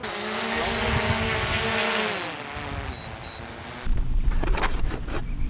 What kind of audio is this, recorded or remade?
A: recorded